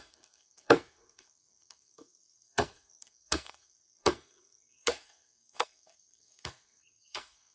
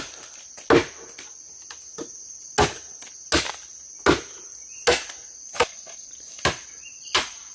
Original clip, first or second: second